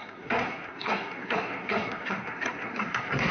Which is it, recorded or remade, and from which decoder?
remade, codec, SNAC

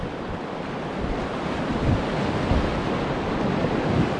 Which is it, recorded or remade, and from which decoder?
recorded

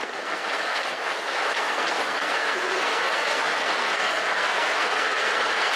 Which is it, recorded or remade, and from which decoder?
remade, codec, SNAC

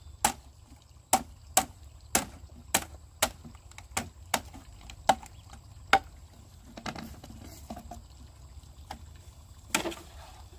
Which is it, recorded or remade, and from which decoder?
recorded